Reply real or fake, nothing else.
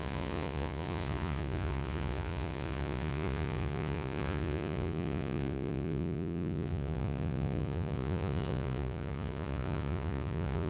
fake